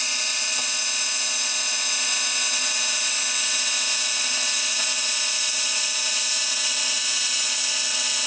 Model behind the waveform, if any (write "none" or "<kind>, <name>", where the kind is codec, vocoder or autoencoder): vocoder, WaveNeXt